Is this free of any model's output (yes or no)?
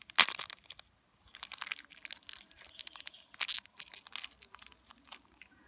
yes